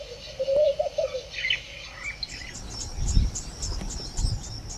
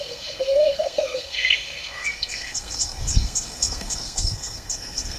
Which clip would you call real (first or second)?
first